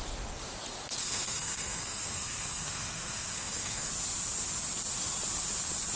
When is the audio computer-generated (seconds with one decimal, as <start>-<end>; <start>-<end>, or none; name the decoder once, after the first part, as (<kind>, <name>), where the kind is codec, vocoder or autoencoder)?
1.0-3.9 (codec, SNAC)